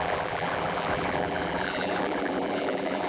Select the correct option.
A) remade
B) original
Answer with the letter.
A